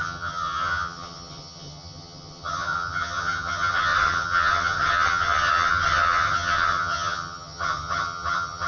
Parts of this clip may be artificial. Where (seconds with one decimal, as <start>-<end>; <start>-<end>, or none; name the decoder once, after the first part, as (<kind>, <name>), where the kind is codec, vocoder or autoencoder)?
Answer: 0.0-8.7 (vocoder, HiFi-GAN)